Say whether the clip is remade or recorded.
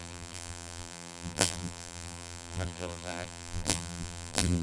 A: remade